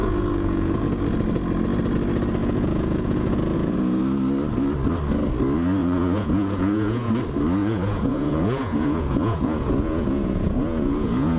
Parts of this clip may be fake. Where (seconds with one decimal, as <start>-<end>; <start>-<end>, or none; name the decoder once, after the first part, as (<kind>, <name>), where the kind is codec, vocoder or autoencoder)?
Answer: 0.0-1.0 (vocoder, Vocos); 2.4-4.0; 5.8-7.1; 7.6-11.4